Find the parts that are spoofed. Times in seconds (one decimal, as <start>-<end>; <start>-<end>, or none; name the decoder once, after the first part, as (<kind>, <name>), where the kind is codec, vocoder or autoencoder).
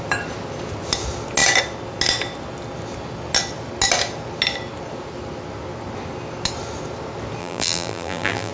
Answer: 7.4-8.5 (vocoder, BigVGAN v2)